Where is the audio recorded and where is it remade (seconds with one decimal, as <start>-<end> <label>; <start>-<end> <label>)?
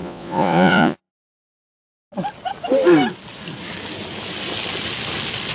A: 0.0-1.1 remade; 1.1-5.5 recorded